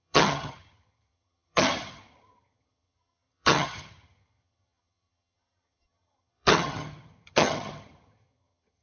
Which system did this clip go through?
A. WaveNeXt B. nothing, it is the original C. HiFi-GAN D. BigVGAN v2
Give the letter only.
C